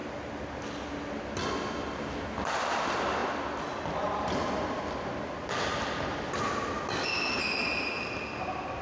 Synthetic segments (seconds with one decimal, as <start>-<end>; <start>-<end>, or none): none